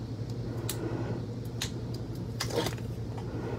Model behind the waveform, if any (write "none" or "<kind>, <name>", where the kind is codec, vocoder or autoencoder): none